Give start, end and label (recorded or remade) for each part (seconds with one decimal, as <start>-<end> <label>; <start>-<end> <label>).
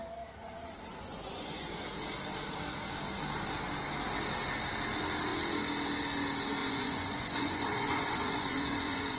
0.0-0.9 recorded; 0.9-1.9 remade; 1.9-6.6 recorded; 6.6-9.2 remade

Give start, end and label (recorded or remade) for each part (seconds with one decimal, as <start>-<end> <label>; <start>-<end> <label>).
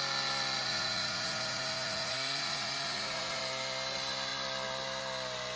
0.0-0.6 recorded; 0.6-3.4 remade; 3.4-5.6 recorded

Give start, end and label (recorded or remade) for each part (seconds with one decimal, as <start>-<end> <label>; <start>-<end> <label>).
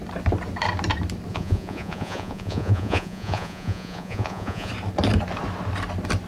0.0-1.3 recorded; 1.3-4.7 remade; 4.7-6.3 recorded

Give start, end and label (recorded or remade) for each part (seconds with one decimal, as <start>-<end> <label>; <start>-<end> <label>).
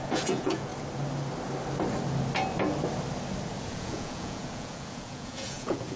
0.0-0.7 remade; 0.7-3.7 recorded; 3.7-6.0 remade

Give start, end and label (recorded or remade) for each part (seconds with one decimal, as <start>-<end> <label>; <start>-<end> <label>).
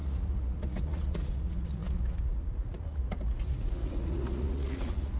0.0-5.2 remade